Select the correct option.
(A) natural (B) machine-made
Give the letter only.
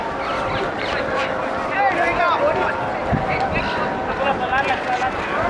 A